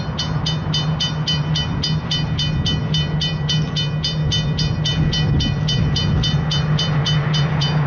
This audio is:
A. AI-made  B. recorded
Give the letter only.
B